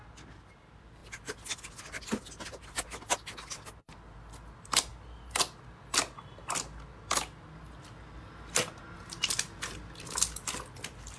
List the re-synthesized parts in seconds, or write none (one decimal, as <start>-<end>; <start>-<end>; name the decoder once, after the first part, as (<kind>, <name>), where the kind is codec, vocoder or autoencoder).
none